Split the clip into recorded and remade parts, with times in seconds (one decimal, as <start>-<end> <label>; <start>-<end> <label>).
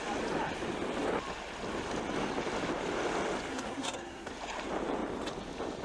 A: 0.0-3.5 recorded; 3.5-4.3 remade; 4.3-5.8 recorded